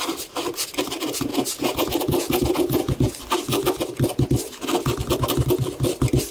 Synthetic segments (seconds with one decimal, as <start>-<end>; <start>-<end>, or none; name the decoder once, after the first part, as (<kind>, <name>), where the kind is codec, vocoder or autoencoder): 1.3-3.1 (vocoder, Vocos)